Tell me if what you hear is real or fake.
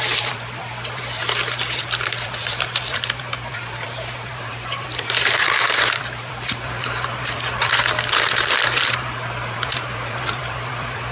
fake